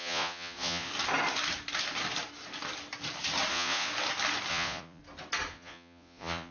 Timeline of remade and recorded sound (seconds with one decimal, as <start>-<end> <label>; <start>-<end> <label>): 0.0-0.9 remade; 0.9-3.5 recorded; 3.5-3.9 remade; 3.9-4.5 recorded; 4.5-5.0 remade; 5.0-5.5 recorded; 5.5-6.5 remade